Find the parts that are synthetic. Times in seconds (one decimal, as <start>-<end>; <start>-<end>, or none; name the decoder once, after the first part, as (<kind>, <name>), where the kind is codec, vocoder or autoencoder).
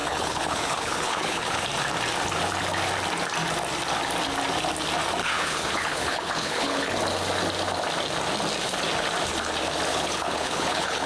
0.0-1.6 (codec, HILCodec); 5.2-6.9; 9.9-11.1